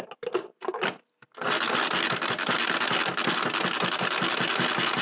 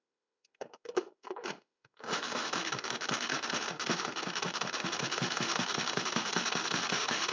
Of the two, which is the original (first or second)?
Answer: first